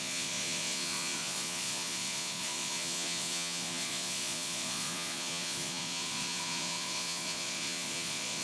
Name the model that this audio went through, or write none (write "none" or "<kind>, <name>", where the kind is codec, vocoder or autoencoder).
vocoder, Vocos